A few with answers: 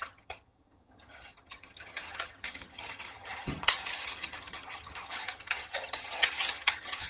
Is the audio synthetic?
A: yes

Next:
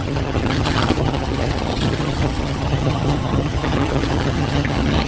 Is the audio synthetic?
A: yes